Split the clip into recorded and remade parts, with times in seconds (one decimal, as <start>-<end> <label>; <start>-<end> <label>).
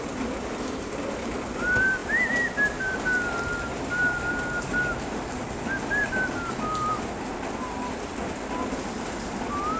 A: 0.0-9.8 recorded